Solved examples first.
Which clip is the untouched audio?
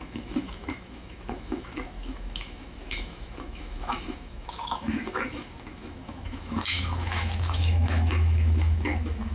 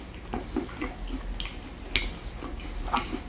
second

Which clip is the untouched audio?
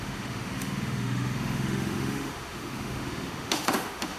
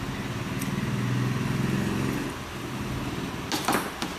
second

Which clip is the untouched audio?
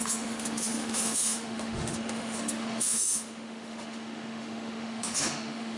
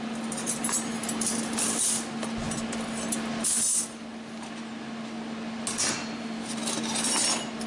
second